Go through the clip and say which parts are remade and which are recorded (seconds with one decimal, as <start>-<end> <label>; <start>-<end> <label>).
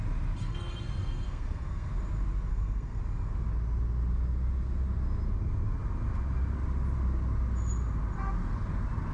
0.0-0.4 recorded; 0.4-1.9 remade; 1.9-2.5 recorded; 2.5-3.0 remade; 3.0-9.1 recorded